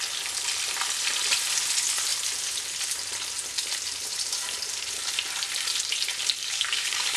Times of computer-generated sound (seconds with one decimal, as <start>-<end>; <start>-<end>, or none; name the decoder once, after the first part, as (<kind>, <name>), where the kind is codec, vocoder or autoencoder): 6.4-7.2 (codec, DAC)